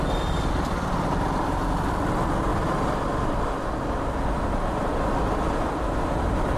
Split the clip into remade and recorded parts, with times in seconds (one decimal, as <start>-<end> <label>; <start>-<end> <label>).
0.0-6.6 recorded